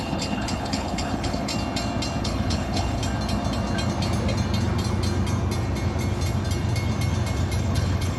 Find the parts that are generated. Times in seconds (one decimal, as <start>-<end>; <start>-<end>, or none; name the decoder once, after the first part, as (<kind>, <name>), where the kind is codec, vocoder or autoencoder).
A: 0.0-1.5 (codec, HILCodec); 2.2-3.0; 7.6-8.2